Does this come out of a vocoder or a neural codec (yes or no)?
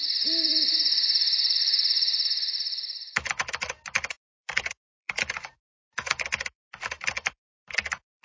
yes